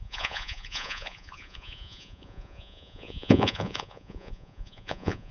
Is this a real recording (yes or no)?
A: no